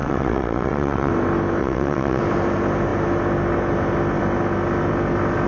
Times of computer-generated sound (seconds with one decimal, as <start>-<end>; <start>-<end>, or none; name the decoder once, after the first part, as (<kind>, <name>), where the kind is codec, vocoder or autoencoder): 0.0-1.1 (vocoder, WaveNeXt); 1.6-2.2